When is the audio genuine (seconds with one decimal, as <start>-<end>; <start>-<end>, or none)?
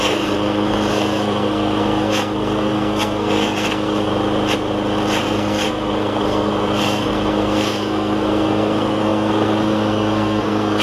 4.1-5.2